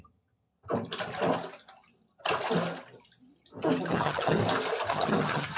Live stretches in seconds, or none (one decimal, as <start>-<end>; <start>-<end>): 0.5-3.9; 4.4-4.9